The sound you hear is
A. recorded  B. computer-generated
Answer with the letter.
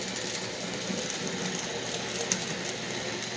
A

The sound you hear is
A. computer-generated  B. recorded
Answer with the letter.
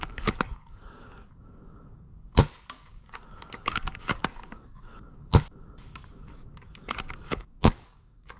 A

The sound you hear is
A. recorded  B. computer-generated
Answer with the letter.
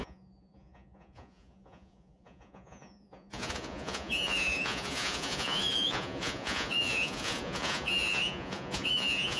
B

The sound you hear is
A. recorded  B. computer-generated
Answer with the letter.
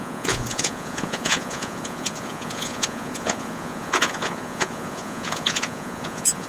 B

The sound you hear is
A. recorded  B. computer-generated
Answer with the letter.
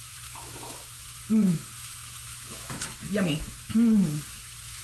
B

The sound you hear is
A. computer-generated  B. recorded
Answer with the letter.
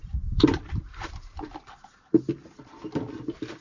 A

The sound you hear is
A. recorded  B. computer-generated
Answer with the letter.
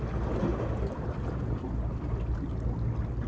A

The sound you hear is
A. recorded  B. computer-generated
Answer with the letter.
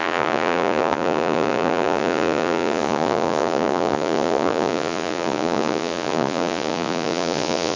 B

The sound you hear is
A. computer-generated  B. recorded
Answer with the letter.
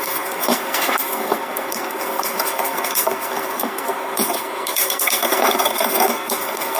A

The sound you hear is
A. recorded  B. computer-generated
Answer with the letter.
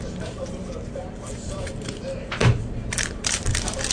B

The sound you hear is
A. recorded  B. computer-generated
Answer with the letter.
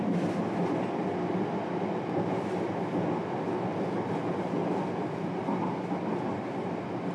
A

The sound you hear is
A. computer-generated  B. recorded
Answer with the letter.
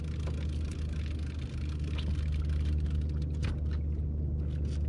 B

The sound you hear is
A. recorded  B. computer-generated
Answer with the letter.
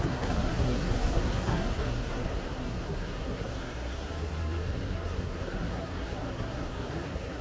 B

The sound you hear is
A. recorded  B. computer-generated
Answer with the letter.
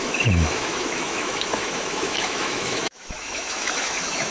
B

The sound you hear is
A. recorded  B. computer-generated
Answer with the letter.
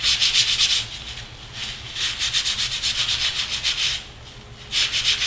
A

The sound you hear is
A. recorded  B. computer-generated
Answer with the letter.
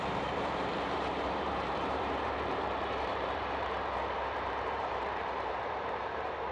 B